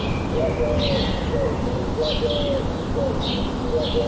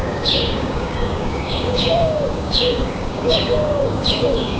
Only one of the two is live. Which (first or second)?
first